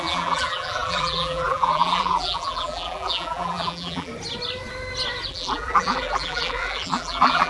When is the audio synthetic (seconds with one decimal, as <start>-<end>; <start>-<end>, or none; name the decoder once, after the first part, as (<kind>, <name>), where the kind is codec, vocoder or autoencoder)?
0.0-4.1 (vocoder, BigVGAN v2); 5.3-7.5